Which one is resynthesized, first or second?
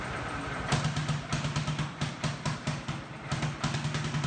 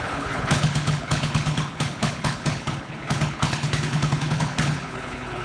second